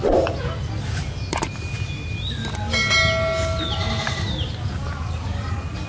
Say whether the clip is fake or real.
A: real